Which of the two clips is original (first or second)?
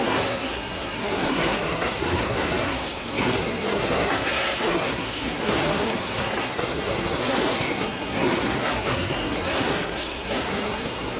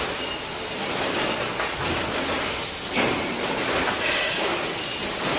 second